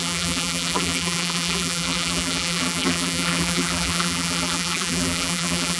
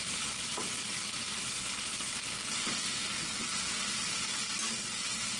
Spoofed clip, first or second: first